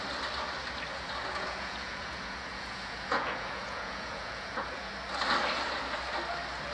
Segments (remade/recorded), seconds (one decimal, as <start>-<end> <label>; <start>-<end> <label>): 0.0-0.9 recorded; 0.9-4.9 remade; 4.9-6.7 recorded